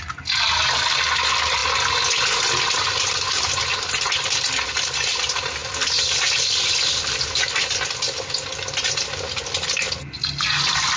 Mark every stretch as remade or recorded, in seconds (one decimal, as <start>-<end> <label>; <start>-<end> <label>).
0.0-11.0 recorded